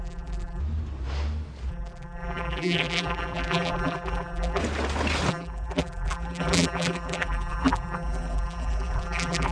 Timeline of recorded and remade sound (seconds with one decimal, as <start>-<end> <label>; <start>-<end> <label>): 0.0-0.6 remade; 0.6-1.7 recorded; 1.7-4.6 remade; 4.6-5.3 recorded; 5.3-9.5 remade